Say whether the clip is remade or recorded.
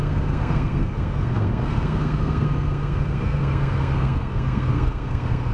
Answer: remade